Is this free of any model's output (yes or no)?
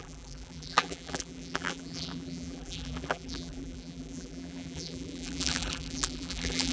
no